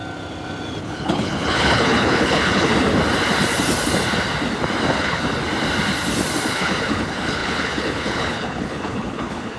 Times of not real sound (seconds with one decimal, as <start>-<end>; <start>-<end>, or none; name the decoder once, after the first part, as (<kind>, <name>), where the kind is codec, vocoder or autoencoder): 0.8-2.7 (codec, HILCodec); 4.9-5.4; 6.5-9.6